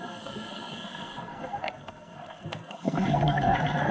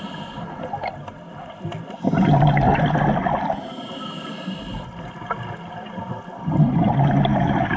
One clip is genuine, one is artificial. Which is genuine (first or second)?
second